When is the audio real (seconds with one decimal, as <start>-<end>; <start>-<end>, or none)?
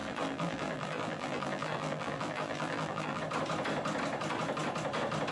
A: 3.2-5.3